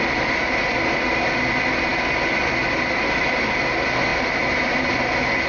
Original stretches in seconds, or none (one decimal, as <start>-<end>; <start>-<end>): 0.0-4.1; 4.9-5.5